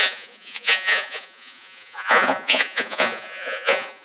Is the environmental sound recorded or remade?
remade